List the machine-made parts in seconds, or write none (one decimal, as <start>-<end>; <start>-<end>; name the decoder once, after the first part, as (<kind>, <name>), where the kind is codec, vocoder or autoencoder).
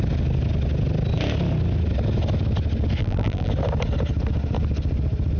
3.0-3.5 (vocoder, BigVGAN v2)